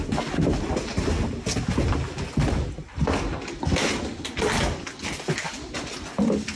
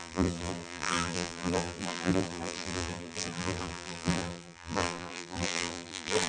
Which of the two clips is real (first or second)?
first